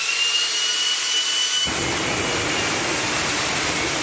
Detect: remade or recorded recorded